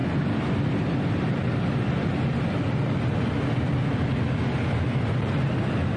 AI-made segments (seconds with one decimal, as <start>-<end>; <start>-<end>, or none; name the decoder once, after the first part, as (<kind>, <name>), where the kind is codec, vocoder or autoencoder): none